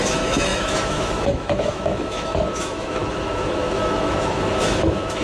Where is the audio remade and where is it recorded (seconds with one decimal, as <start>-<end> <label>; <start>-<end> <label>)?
0.0-5.2 remade